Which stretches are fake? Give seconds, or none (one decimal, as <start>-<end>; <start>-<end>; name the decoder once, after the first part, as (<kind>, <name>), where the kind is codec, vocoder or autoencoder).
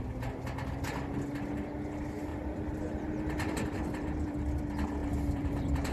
2.3-4.6 (vocoder, BigVGAN v2); 5.0-5.9